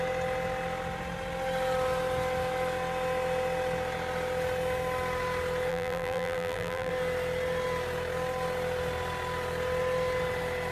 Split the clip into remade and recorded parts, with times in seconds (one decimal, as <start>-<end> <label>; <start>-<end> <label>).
0.0-5.7 recorded; 5.7-6.9 remade; 6.9-10.7 recorded

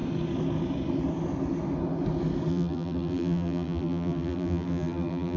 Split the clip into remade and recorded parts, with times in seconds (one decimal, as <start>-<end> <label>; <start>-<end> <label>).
0.0-2.5 recorded; 2.5-5.4 remade

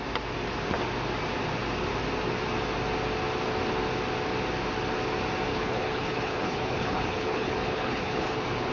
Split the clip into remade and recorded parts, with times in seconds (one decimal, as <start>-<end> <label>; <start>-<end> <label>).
0.0-5.5 recorded; 5.5-8.7 remade

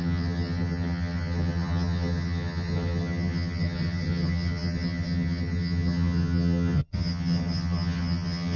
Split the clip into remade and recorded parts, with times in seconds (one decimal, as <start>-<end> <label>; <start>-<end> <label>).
0.0-8.6 remade